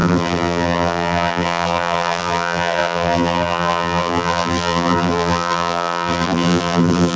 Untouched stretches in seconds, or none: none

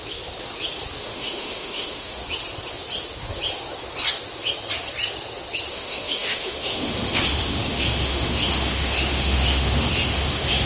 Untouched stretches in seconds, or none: 0.0-1.0; 2.2-5.7

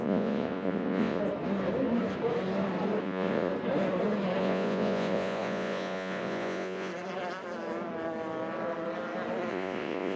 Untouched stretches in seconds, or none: 1.2-3.0; 3.5-4.4; 6.9-9.5

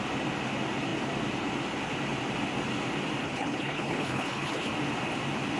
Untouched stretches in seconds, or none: 0.0-3.2; 4.7-5.6

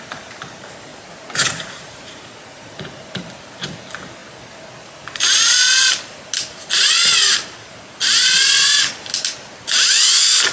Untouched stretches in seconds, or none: 0.0-0.9; 3.0-10.5

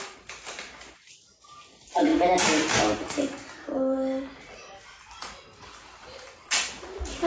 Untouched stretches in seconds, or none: 0.0-7.3

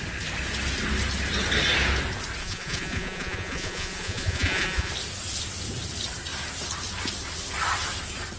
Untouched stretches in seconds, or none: 0.0-2.4; 4.9-8.4